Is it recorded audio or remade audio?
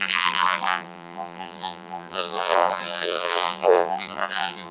remade